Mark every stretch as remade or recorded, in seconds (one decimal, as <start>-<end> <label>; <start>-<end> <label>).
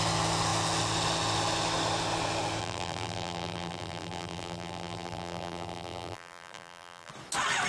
0.0-2.6 recorded; 2.6-7.1 remade; 7.1-7.7 recorded